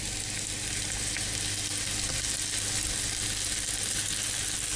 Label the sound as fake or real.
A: real